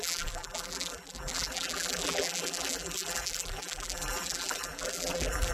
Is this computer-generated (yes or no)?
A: yes